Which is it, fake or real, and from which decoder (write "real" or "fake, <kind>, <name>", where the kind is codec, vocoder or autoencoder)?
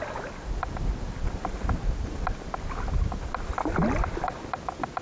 real